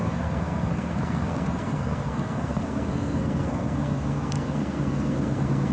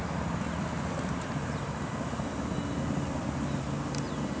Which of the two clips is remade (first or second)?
first